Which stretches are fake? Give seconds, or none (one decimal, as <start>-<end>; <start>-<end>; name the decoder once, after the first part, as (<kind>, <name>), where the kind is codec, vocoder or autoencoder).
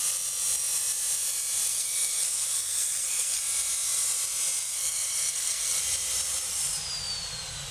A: 1.7-3.4 (codec, SNAC); 4.6-5.8